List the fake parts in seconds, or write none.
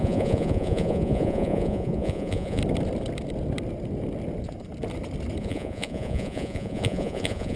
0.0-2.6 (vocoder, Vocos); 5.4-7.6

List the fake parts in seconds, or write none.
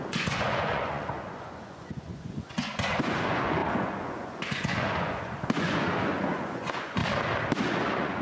0.0-7.0 (vocoder, Vocos); 7.6-8.2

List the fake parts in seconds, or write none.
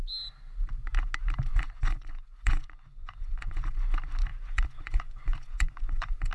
1.5-3.8 (vocoder, Vocos); 4.3-6.3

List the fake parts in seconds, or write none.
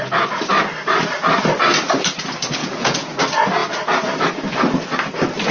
2.6-3.2 (vocoder, Vocos)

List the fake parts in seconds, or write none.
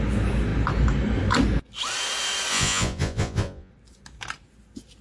2.5-3.7 (vocoder, Vocos)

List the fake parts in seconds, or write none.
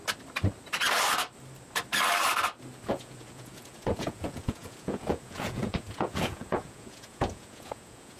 2.9-8.2 (vocoder, Vocos)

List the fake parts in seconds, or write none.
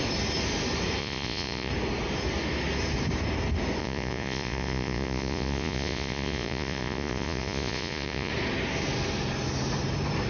1.0-1.7 (vocoder, Vocos); 3.8-8.3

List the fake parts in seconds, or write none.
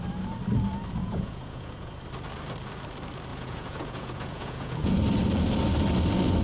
1.0-1.9 (vocoder, Vocos); 3.3-4.9